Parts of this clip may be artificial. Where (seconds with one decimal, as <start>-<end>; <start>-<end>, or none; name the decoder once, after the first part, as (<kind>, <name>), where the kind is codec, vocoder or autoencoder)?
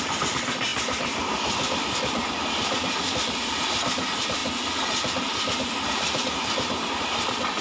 0.0-4.4 (vocoder, BigVGAN v2); 5.7-7.6